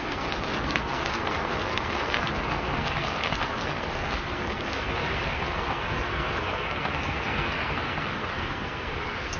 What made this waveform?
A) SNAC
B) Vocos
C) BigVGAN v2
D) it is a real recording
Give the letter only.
A